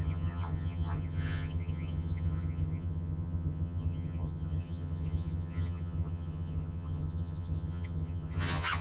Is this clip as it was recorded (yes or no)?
no